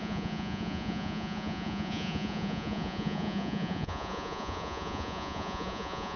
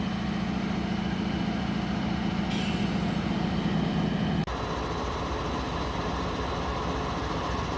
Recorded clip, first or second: second